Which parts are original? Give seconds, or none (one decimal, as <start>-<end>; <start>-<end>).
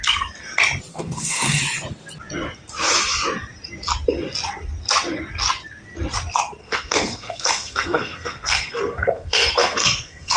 0.0-0.9; 1.6-6.6